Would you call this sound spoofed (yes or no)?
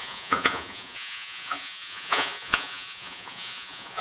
yes